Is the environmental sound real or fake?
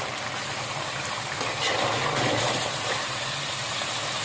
real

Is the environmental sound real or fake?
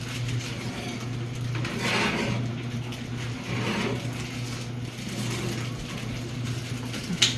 real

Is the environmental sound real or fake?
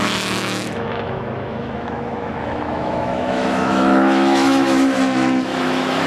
fake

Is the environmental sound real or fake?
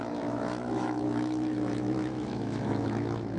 fake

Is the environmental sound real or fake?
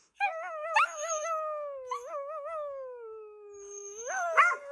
fake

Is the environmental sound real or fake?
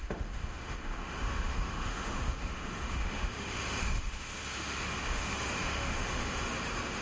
fake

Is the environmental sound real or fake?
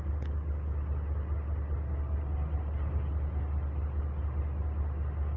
real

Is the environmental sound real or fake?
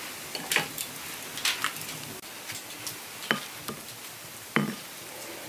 real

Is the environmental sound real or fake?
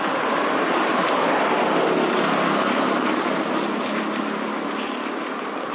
real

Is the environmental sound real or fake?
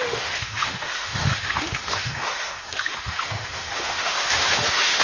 fake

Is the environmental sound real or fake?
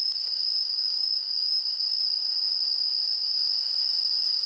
fake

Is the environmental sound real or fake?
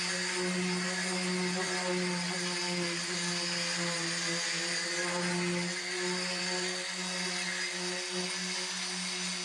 real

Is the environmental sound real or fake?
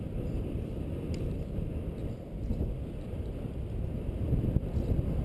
real